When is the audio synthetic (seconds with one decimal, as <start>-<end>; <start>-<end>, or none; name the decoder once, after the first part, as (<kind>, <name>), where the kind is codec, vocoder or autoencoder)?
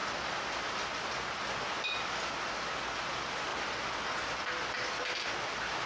none